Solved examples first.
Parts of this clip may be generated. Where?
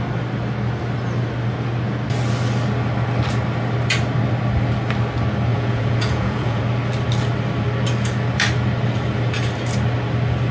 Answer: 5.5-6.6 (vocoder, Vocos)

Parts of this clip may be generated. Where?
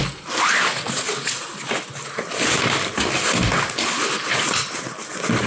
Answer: none